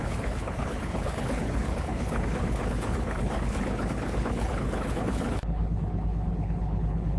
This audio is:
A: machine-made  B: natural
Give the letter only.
A